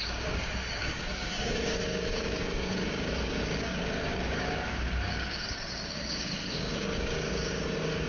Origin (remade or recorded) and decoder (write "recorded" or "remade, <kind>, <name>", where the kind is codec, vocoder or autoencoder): remade, codec, DAC